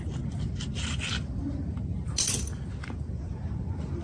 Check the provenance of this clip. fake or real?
real